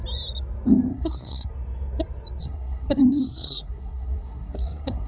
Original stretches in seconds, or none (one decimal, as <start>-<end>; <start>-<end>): 0.0-0.9; 1.5-2.4